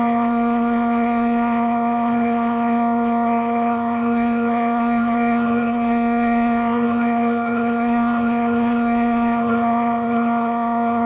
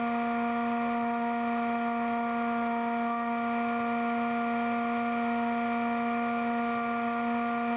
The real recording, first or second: second